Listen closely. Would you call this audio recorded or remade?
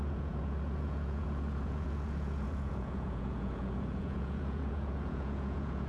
remade